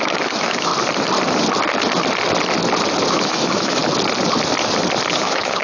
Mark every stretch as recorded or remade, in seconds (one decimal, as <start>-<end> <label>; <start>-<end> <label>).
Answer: 0.0-0.7 remade; 0.7-3.1 recorded; 3.1-3.8 remade; 3.8-5.1 recorded; 5.1-5.6 remade